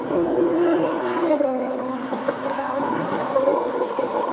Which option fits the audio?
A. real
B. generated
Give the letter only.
B